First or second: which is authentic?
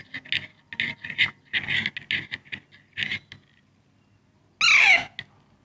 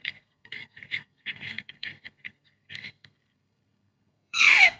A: first